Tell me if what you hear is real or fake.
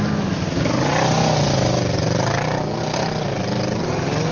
real